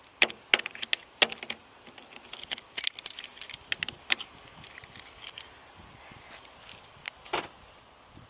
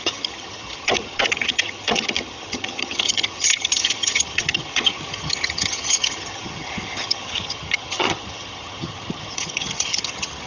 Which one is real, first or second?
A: first